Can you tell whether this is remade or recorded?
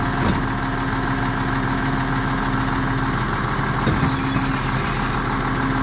recorded